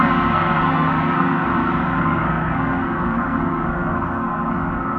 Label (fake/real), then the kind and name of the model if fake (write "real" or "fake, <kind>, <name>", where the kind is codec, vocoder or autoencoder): fake, codec, SNAC